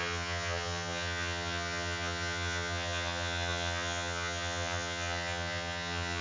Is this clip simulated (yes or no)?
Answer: yes